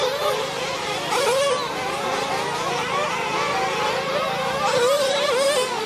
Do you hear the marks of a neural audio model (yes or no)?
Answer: no